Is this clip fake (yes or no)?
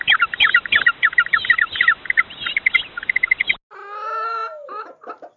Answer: no